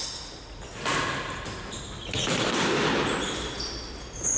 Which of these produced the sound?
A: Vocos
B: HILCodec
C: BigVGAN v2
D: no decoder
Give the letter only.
D